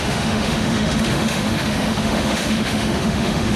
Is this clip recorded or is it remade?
remade